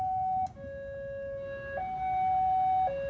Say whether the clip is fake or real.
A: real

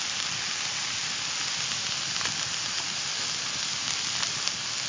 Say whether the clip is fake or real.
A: real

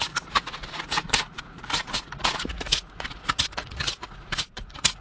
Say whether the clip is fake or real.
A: fake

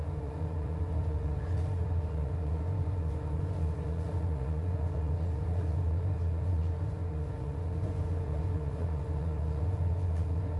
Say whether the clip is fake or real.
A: fake